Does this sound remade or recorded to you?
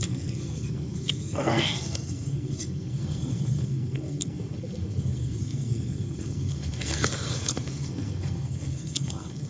remade